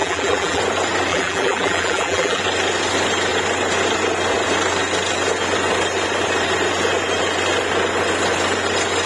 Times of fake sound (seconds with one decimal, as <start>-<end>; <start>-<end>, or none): 0.0-0.6; 1.1-2.4